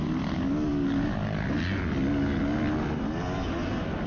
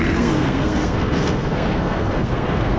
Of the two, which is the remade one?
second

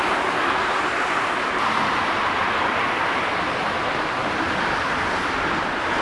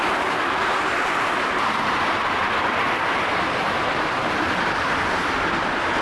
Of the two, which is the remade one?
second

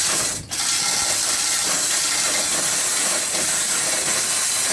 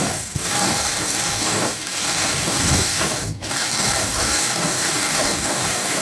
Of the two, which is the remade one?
second